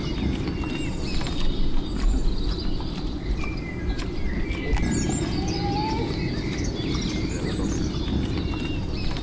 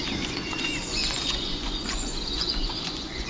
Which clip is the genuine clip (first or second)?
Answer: first